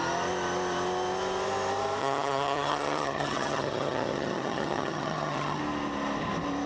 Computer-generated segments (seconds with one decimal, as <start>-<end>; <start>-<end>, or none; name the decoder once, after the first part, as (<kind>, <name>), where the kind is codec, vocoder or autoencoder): 2.0-5.6 (vocoder, HiFi-GAN)

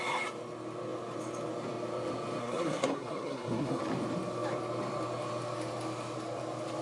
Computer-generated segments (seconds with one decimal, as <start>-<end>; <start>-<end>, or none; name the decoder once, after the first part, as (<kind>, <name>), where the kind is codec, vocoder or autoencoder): 2.4-3.8 (codec, SNAC)

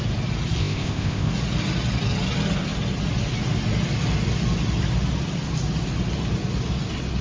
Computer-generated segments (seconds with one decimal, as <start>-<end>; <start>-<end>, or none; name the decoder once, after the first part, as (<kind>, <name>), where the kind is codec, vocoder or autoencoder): 0.6-1.3 (codec, ZipCodec)

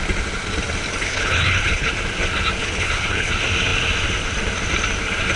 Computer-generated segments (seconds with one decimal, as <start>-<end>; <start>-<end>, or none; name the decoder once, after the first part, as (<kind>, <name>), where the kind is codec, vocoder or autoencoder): 1.0-1.9 (codec, HILCodec); 2.6-3.3

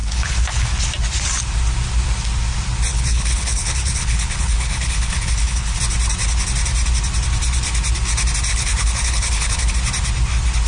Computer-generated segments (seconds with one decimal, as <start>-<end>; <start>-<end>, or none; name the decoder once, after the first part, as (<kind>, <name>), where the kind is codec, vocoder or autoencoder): 0.0-0.7 (codec, HILCodec); 2.9-5.8; 8.5-9.7

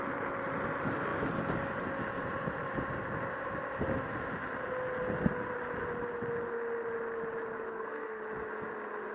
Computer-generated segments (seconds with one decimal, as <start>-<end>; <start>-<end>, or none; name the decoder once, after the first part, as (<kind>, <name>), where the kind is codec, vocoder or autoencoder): 7.7-8.2 (codec, SNAC)